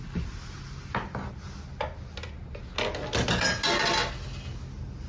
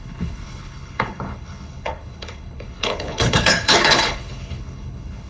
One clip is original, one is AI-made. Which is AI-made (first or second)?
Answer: second